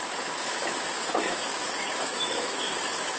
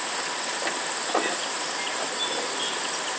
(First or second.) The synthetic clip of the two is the first